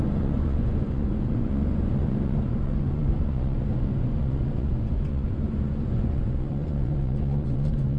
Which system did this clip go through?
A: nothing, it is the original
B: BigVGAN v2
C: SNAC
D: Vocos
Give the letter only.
D